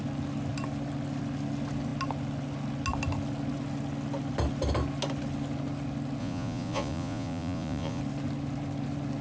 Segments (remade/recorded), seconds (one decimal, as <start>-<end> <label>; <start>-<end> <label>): 0.0-6.2 recorded; 6.2-8.0 remade; 8.0-9.2 recorded